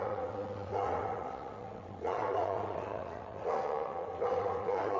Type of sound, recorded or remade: remade